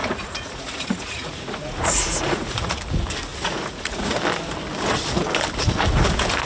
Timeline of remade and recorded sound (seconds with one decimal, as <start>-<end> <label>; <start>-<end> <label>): 0.0-2.8 remade; 2.8-3.3 recorded; 3.3-4.2 remade; 4.2-6.5 recorded